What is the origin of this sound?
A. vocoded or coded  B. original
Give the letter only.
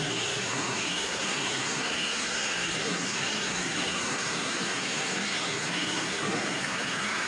A